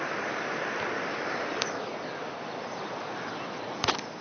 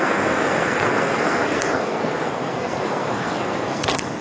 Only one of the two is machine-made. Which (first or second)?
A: second